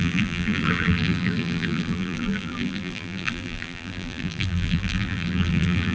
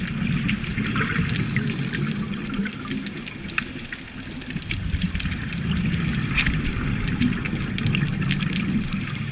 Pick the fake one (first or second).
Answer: first